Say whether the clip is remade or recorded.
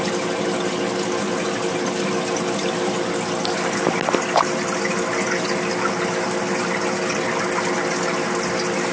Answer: recorded